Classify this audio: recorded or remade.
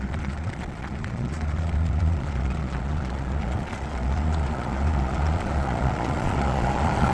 remade